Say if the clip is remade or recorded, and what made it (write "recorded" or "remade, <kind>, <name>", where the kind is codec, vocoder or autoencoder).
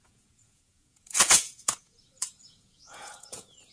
remade, vocoder, Vocos